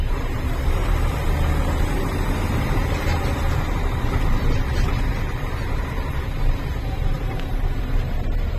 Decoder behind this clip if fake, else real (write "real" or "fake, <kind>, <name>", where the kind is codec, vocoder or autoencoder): fake, vocoder, BigVGAN v2